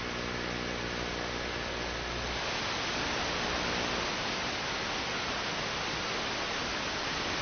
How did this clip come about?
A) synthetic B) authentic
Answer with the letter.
B